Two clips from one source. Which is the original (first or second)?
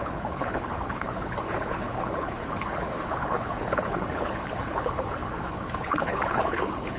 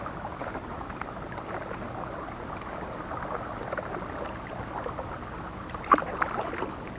second